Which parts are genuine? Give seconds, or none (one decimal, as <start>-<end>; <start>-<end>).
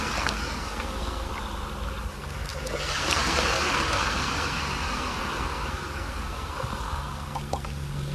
1.3-2.1